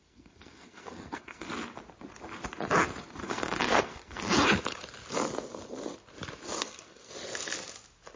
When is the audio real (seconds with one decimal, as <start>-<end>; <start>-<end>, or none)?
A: 1.5-3.2; 4.2-6.6; 7.1-8.2